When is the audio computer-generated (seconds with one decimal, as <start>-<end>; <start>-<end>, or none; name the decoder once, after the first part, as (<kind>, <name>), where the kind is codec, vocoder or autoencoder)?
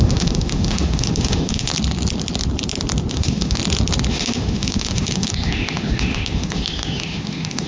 0.0-1.7 (autoencoder, DAC-VAE); 3.1-3.6; 4.1-7.7